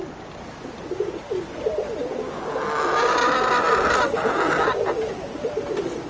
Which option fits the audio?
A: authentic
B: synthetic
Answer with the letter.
A